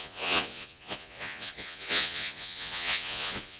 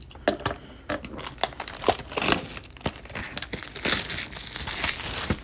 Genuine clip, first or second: second